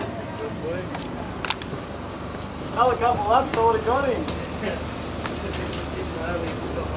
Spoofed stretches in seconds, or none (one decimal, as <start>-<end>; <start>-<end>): none